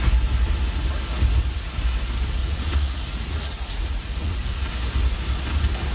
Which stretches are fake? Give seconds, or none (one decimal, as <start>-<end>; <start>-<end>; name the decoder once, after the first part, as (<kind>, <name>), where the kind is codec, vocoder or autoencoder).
2.4-4.7 (vocoder, Vocos)